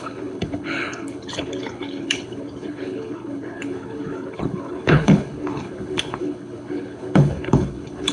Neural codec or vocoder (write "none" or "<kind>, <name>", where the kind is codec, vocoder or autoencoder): codec, HILCodec